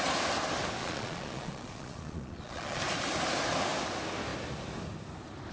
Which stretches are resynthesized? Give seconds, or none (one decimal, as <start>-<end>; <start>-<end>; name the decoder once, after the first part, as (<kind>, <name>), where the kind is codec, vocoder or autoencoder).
0.8-2.8 (vocoder, Vocos)

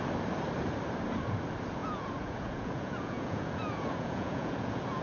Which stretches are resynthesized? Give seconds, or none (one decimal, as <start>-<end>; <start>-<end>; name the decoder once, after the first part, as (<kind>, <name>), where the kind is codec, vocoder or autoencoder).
1.8-5.0 (vocoder, Vocos)